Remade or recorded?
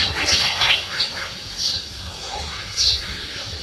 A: remade